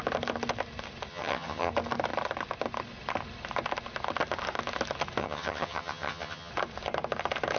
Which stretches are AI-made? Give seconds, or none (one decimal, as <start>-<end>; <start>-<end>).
1.1-1.7; 5.2-6.5